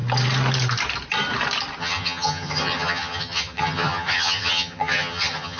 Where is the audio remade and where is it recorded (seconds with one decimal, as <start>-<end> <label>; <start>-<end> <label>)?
0.0-1.8 recorded; 1.8-5.6 remade